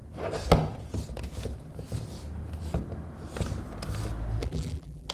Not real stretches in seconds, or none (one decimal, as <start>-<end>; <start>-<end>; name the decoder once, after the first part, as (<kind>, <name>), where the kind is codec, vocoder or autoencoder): 4.4-5.1 (vocoder, BigVGAN v2)